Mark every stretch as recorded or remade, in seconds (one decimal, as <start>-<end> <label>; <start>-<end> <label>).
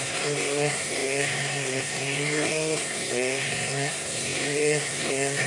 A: 0.0-5.5 remade